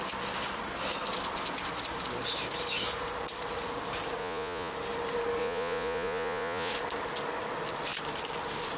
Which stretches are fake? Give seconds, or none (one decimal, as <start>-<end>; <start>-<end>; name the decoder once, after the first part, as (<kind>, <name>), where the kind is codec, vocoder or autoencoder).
4.2-4.7 (vocoder, Vocos); 5.4-6.7